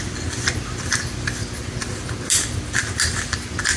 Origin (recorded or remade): recorded